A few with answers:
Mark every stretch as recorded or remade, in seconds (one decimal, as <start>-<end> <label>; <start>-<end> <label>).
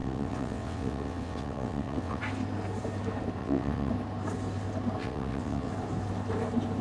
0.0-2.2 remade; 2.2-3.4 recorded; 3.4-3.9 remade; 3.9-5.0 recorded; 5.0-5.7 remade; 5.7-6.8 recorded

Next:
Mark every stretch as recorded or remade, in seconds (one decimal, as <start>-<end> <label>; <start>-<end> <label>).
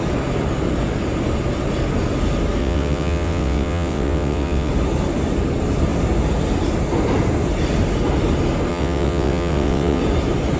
0.0-2.6 recorded; 2.6-4.7 remade; 4.7-8.7 recorded; 8.7-10.0 remade; 10.0-10.6 recorded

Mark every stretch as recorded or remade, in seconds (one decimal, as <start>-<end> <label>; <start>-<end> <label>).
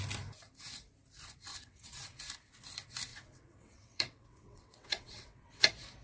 0.0-1.5 recorded; 1.5-2.2 remade; 2.2-3.1 recorded; 3.1-5.6 remade; 5.6-6.0 recorded